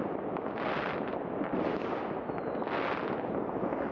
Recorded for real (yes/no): yes